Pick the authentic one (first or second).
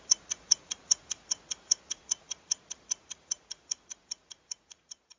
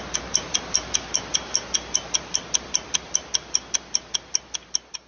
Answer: second